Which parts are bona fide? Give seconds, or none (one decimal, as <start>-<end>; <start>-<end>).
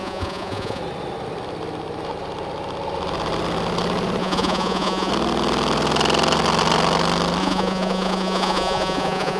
0.8-4.2; 5.1-7.4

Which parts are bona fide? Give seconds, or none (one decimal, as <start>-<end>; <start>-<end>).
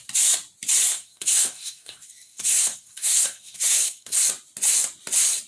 0.0-0.9; 4.2-5.5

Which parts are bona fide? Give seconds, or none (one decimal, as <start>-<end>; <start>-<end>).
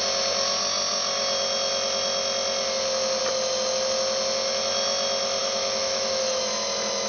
0.0-5.4; 6.4-7.1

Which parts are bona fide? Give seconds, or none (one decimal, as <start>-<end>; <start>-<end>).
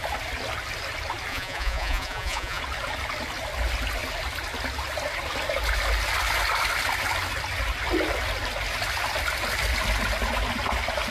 0.0-1.3; 2.6-11.1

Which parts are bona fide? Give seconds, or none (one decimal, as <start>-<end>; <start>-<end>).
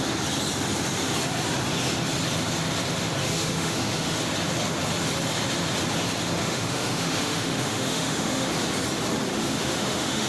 0.0-3.2; 4.2-6.4; 8.5-9.3